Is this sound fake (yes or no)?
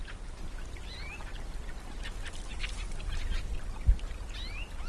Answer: no